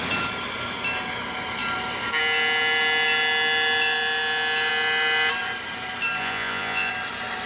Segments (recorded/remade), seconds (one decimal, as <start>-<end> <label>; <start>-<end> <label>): 0.0-6.2 recorded; 6.2-6.9 remade; 6.9-7.5 recorded